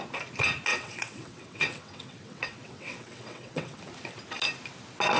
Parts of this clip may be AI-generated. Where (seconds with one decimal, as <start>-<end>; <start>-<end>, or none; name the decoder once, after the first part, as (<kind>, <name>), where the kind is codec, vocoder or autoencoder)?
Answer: 0.7-3.8 (vocoder, WaveNeXt)

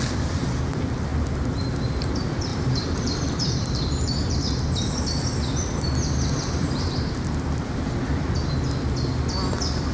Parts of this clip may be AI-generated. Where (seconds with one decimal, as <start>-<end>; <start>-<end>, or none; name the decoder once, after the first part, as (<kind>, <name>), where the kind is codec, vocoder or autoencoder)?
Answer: 2.5-5.0 (vocoder, BigVGAN v2); 6.6-7.5

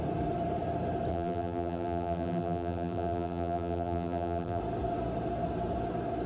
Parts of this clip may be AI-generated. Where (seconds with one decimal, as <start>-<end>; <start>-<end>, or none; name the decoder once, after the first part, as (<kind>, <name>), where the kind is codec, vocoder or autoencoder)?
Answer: 1.1-4.6 (vocoder, BigVGAN v2)

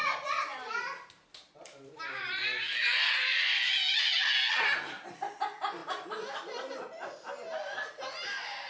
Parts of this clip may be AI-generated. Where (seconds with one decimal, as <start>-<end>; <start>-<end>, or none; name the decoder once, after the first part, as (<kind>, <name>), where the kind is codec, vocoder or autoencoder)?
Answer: none

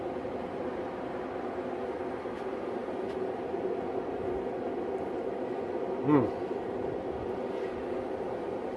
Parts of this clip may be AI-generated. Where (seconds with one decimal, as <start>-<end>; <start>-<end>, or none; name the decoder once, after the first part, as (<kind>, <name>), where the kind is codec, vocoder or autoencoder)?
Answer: none

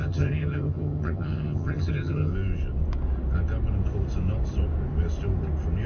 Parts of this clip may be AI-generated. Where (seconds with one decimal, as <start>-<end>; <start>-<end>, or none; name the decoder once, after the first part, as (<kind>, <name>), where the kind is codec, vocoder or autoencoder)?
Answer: 0.0-2.3 (vocoder, HiFi-GAN)

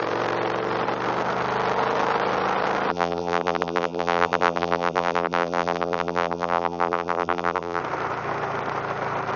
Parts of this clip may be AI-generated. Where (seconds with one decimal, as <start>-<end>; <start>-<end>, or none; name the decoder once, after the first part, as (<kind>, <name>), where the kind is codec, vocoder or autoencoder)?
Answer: 2.9-7.8 (vocoder, BigVGAN v2)